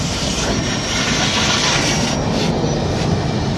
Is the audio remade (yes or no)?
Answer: no